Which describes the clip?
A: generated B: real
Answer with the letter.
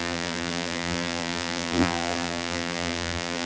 A